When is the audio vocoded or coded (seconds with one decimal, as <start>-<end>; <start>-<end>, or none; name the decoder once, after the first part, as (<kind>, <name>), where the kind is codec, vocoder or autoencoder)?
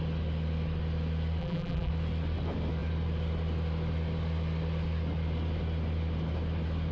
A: 1.4-1.9 (vocoder, BigVGAN v2)